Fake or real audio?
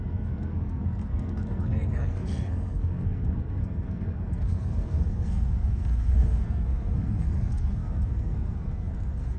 fake